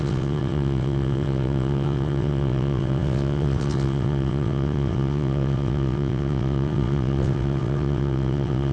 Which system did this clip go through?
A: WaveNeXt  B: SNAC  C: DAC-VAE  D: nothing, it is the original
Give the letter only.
A